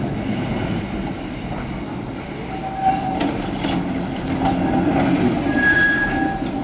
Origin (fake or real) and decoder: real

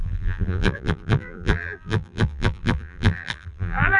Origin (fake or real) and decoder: fake, vocoder, BigVGAN v2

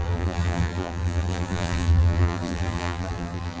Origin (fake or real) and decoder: fake, vocoder, BigVGAN v2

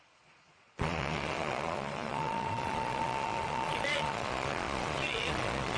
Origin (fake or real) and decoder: fake, vocoder, Vocos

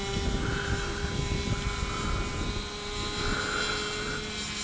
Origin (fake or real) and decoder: real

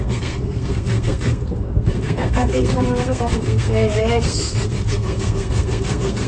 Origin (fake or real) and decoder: fake, codec, SNAC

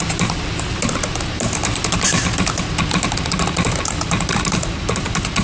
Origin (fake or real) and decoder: real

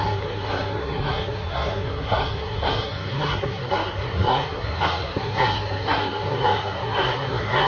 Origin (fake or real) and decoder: fake, codec, SNAC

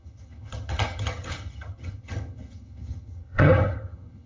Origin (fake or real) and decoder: fake, vocoder, HiFi-GAN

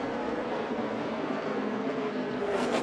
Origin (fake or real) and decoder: fake, codec, SNAC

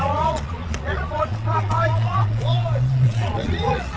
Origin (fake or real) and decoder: fake, vocoder, Vocos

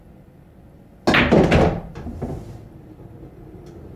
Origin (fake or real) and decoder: real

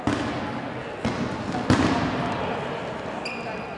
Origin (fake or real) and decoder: real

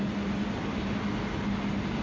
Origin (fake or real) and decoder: real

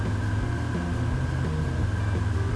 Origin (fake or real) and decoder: real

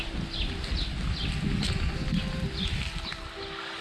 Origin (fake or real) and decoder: real